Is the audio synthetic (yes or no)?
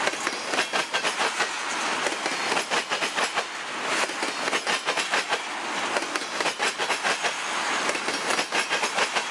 no